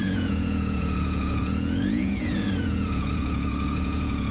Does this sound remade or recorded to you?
remade